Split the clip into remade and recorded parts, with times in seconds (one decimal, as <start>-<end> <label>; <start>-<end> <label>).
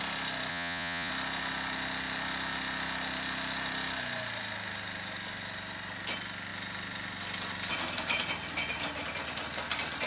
0.0-0.5 recorded; 0.5-1.1 remade; 1.1-10.1 recorded